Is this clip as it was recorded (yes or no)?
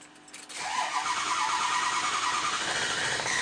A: yes